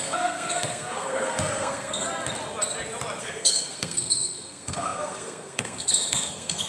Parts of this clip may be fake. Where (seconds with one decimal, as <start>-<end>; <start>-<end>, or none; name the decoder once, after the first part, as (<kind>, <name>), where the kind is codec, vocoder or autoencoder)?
0.0-2.1 (codec, SNAC); 3.2-6.7